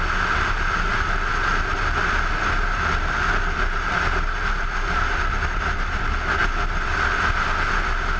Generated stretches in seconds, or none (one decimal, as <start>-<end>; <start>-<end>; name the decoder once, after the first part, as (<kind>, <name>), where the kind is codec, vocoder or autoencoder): none